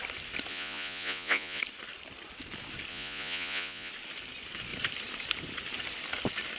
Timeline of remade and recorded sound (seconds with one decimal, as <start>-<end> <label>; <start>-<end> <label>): 0.0-0.5 recorded; 0.5-1.6 remade; 1.6-2.9 recorded; 2.9-3.9 remade; 3.9-6.6 recorded